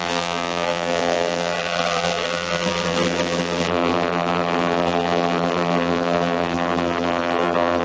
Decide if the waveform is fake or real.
fake